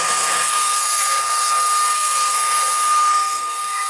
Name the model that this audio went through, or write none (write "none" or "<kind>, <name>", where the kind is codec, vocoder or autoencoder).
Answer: codec, SNAC